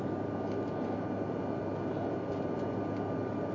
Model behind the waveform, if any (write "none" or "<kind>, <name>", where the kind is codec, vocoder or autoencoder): none